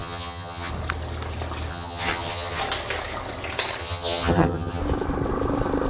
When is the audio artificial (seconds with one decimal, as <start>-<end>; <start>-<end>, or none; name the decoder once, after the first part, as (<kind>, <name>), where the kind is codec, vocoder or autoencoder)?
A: 0.0-0.7 (vocoder, HiFi-GAN); 1.7-2.6; 3.8-4.8